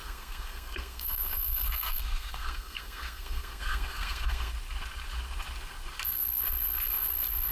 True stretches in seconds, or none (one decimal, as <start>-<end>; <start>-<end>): 4.5-7.5